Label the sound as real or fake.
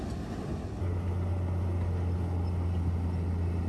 real